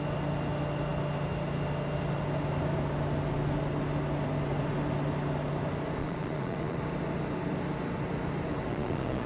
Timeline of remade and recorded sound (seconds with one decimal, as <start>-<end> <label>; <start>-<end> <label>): 0.0-6.0 recorded; 6.0-6.8 remade; 6.8-8.7 recorded; 8.7-9.3 remade